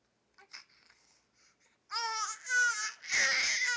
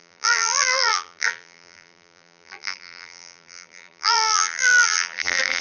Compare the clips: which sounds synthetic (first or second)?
second